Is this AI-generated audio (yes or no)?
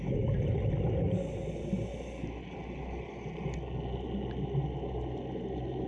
no